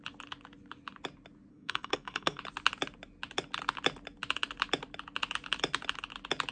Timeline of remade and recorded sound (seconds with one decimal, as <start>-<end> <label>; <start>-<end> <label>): 0.0-1.5 recorded; 1.5-2.4 remade; 2.4-6.5 recorded